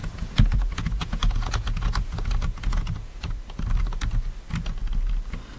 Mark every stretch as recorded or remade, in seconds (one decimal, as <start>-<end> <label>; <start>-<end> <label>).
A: 0.0-3.3 remade; 3.3-5.6 recorded